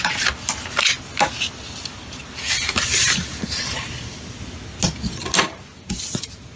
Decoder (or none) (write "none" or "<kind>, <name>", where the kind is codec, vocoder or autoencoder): none